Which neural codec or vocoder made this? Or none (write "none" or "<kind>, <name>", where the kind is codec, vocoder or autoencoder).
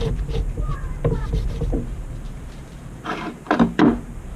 vocoder, BigVGAN v2